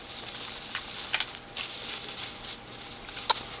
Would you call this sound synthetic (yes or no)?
no